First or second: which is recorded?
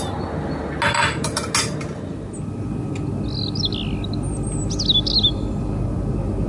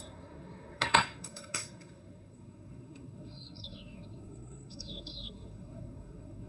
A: first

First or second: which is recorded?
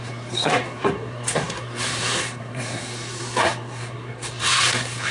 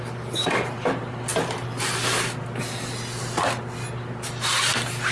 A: second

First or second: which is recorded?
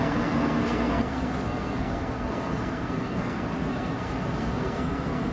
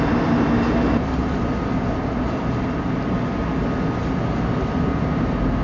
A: second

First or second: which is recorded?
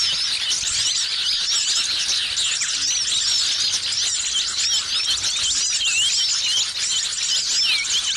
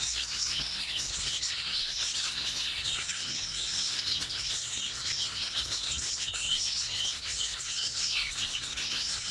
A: first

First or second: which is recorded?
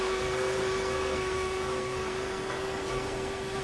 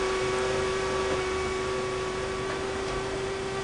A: second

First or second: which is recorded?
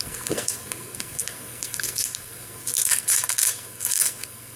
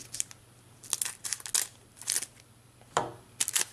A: second